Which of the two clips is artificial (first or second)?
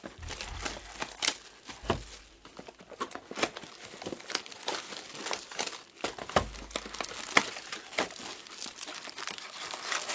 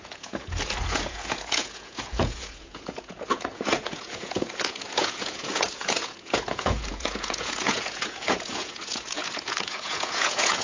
second